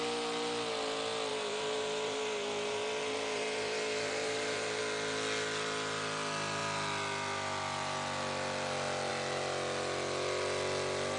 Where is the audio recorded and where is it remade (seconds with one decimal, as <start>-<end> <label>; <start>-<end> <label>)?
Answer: 0.0-1.3 recorded; 1.3-4.8 remade; 4.8-11.2 recorded